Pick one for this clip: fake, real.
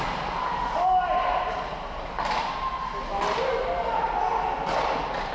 real